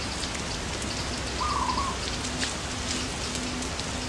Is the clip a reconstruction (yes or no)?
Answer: no